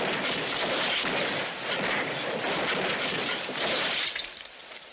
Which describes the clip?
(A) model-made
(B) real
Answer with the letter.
A